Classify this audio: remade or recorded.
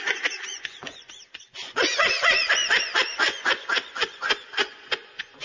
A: remade